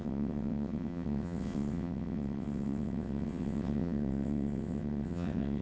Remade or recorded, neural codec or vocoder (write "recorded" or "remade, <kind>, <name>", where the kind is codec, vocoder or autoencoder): remade, vocoder, WaveNeXt